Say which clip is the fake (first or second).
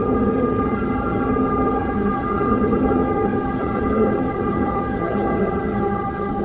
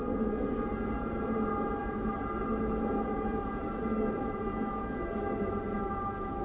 first